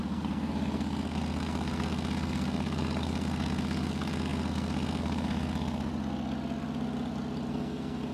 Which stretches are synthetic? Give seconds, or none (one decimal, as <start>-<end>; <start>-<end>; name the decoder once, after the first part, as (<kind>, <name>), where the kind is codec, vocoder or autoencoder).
0.0-5.9 (codec, SNAC); 7.5-8.1